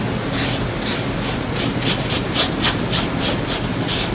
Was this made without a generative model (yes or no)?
yes